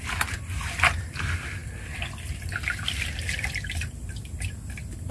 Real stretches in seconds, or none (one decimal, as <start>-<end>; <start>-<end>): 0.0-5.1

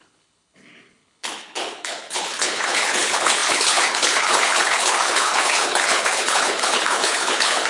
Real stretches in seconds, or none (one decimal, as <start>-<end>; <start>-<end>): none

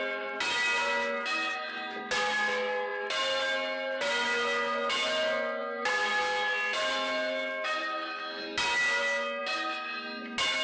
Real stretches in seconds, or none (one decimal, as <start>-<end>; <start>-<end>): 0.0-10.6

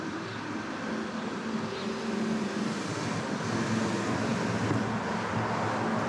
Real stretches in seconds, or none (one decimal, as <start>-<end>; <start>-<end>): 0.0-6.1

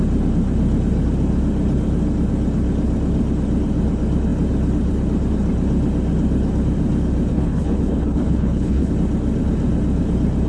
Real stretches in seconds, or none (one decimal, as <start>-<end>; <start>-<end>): 0.0-7.3; 8.9-10.5